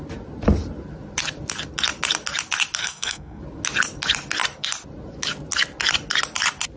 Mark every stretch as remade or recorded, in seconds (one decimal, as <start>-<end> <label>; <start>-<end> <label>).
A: 0.0-2.8 recorded; 2.8-3.4 remade; 3.4-6.8 recorded